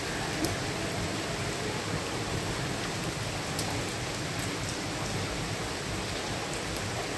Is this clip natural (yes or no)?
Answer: yes